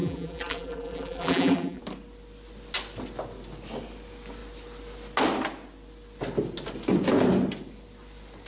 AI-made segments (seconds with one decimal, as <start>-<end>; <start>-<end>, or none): 0.0-1.8